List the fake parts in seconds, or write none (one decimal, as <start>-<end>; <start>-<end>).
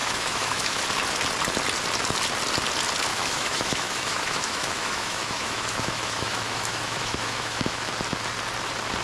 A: 0.0-0.8; 3.1-7.9